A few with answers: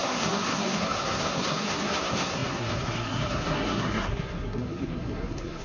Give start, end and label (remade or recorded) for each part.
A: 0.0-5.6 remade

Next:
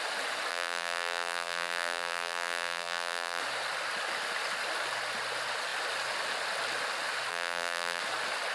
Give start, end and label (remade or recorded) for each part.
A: 0.0-0.5 recorded; 0.5-3.4 remade; 3.4-7.3 recorded; 7.3-8.0 remade; 8.0-8.5 recorded

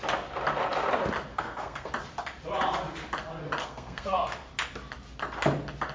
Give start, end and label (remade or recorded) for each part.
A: 0.0-1.3 recorded; 1.3-1.9 remade; 1.9-3.6 recorded; 3.6-4.5 remade; 4.5-5.9 recorded

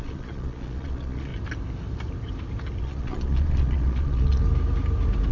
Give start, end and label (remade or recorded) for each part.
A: 0.0-1.3 remade; 1.3-2.8 recorded; 2.8-4.4 remade; 4.4-5.3 recorded

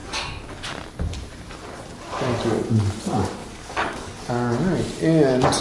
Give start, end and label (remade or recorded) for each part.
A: 0.0-0.7 remade; 0.7-3.4 recorded; 3.4-4.3 remade; 4.3-5.6 recorded

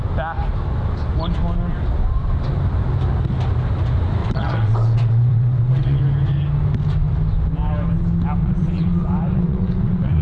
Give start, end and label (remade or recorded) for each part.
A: 0.0-4.2 recorded; 4.2-6.0 remade; 6.0-8.4 recorded; 8.4-10.2 remade

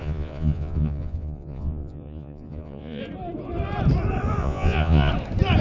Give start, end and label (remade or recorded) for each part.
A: 0.0-3.0 remade; 3.0-4.4 recorded; 4.4-5.1 remade; 5.1-5.6 recorded

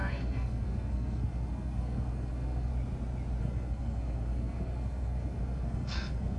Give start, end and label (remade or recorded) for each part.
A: 0.0-2.7 remade; 2.7-3.4 recorded; 3.4-6.4 remade